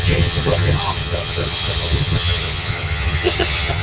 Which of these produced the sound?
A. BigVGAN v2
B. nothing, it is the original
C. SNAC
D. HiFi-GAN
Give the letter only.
D